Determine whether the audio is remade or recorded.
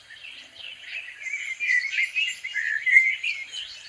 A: recorded